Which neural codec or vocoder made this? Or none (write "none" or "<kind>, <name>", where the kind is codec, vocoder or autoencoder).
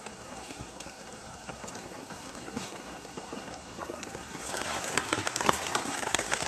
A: codec, SNAC